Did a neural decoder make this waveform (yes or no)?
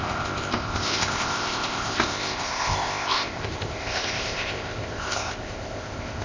yes